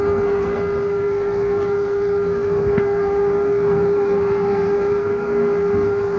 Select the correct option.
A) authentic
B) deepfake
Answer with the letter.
B